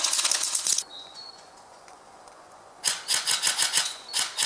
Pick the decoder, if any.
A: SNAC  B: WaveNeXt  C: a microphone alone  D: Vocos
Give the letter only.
D